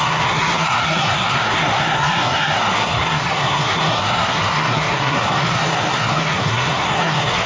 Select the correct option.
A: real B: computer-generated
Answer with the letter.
B